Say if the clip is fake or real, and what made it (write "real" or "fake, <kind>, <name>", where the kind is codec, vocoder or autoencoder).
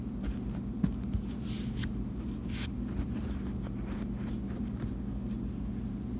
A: real